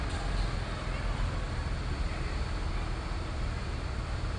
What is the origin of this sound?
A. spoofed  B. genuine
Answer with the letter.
B